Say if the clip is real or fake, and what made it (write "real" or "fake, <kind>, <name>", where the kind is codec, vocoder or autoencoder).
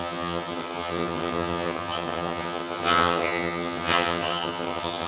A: fake, vocoder, HiFi-GAN